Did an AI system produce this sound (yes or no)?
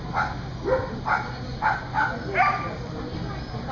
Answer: no